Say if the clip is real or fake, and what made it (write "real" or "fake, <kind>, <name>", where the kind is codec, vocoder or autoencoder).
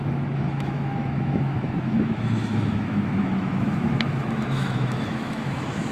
fake, autoencoder, DAC-VAE